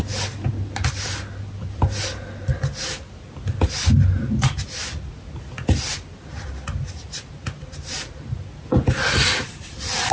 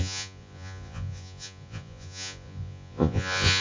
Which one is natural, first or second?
first